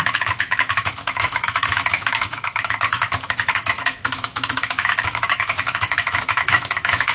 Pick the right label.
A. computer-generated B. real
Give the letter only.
A